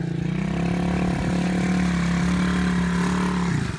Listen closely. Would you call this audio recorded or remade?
recorded